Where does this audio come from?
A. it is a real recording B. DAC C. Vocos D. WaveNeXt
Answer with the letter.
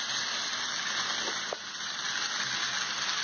A